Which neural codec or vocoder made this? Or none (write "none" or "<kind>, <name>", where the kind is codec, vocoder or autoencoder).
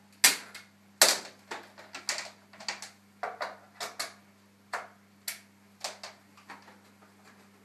none